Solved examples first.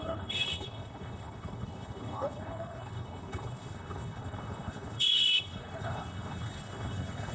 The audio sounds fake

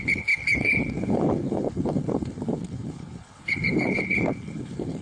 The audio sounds fake